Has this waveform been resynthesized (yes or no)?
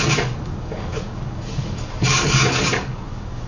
yes